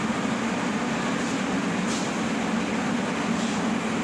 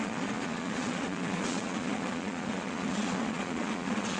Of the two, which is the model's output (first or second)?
second